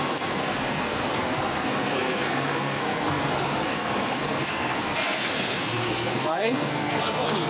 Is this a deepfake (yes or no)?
yes